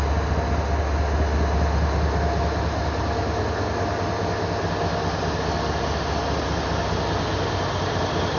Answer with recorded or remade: recorded